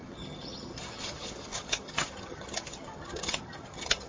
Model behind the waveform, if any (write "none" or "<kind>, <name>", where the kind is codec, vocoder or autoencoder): vocoder, HiFi-GAN